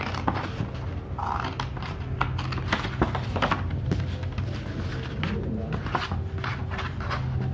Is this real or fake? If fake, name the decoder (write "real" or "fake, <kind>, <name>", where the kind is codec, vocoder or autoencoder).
real